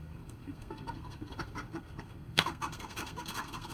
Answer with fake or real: fake